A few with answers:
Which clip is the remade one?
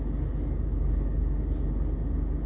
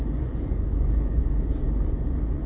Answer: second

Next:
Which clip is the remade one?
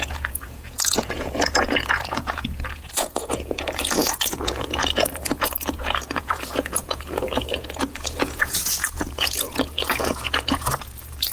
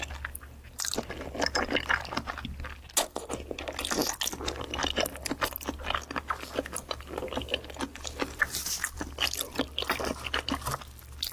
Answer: first